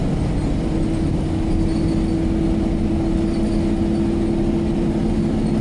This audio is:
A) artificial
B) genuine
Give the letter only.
B